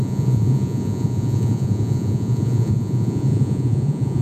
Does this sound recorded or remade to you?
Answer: remade